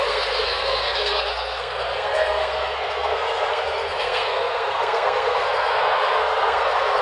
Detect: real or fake fake